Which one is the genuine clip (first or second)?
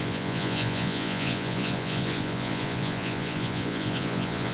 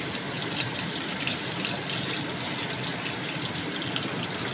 second